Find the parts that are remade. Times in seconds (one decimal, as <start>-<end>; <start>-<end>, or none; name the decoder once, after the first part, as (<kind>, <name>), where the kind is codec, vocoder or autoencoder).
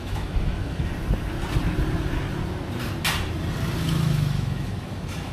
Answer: 0.0-0.9 (autoencoder, DAC-VAE); 3.8-5.3